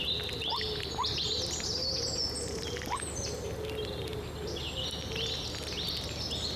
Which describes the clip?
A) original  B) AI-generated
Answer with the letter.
A